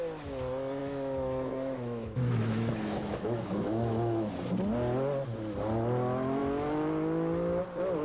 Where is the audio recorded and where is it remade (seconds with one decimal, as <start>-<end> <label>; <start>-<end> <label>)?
0.0-0.8 recorded; 0.8-4.3 remade; 4.3-8.0 recorded